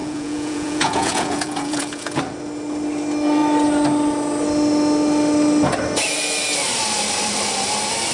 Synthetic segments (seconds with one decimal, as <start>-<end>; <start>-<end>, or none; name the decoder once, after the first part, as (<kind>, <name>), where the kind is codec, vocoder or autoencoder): 0.0-2.2 (vocoder, Vocos)